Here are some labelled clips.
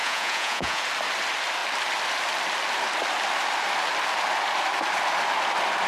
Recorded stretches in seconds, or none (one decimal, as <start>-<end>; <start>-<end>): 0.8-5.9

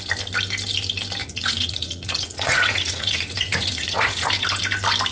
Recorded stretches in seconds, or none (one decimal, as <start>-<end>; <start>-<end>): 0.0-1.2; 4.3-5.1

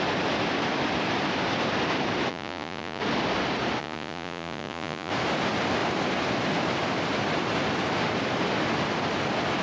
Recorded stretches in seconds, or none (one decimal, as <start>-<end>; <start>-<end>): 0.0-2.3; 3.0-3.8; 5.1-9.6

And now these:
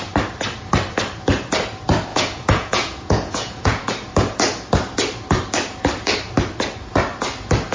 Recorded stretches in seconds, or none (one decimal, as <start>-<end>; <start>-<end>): 0.0-2.1; 3.9-7.7

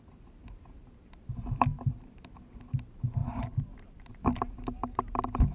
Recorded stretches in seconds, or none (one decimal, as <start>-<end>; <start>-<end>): 0.0-5.5

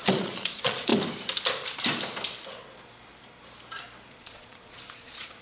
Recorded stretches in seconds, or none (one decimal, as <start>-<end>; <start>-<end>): 0.9-4.1

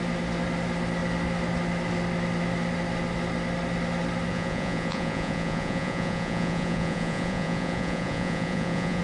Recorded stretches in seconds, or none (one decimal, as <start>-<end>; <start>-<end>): 0.0-4.3